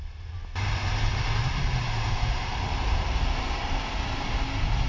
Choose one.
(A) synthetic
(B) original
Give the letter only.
B